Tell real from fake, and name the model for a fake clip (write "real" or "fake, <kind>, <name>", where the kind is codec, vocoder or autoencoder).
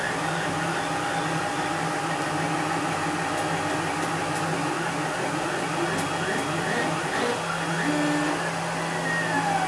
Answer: real